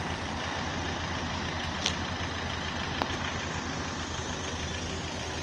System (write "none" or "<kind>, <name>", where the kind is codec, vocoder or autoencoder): none